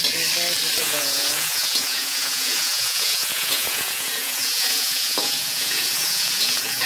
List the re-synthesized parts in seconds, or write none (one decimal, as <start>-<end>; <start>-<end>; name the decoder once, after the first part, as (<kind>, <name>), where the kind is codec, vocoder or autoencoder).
0.8-6.9 (vocoder, Vocos)